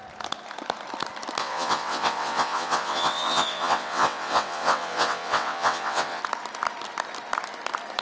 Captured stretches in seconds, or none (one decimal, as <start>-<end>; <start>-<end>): 0.0-1.4; 6.2-8.0